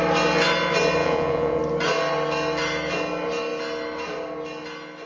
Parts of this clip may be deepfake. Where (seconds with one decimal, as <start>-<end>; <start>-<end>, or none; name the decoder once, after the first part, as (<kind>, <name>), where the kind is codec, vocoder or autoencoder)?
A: 1.0-1.6 (vocoder, Vocos)